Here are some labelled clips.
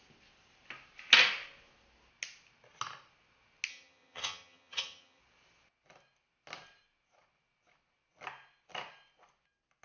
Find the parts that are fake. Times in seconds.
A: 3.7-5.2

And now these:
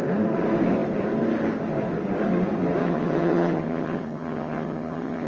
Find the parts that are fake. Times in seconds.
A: 2.8-5.3

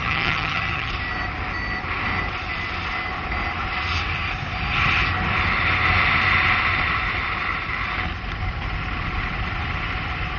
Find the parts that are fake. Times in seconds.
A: 0.0-0.9

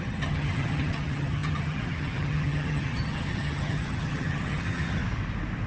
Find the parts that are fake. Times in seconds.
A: 0.0-5.0

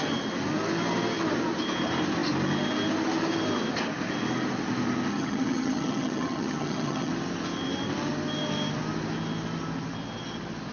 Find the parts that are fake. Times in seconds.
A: 5.1-7.1

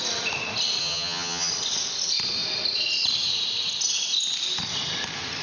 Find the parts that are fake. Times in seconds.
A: 0.8-1.5